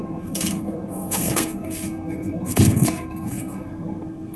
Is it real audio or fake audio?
fake